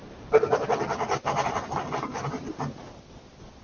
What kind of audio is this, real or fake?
real